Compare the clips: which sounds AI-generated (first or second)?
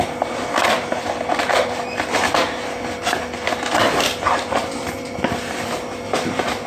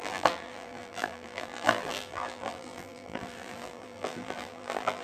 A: second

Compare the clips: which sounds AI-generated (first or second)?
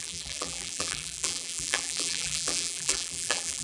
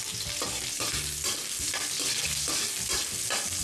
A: first